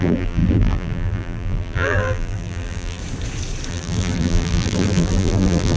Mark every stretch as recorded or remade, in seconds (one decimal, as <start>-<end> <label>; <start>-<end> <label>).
0.0-3.0 remade; 3.0-3.7 recorded; 3.7-5.8 remade